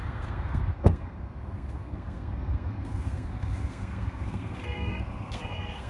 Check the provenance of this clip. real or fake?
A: fake